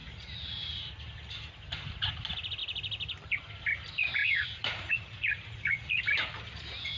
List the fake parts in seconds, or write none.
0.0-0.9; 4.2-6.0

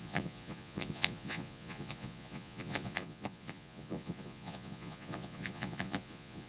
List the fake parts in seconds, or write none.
0.0-6.5

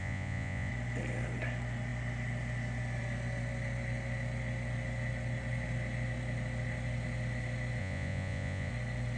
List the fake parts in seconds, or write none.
0.0-0.7; 7.8-8.7